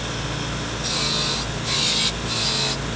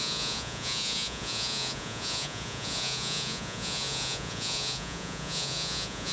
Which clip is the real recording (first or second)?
first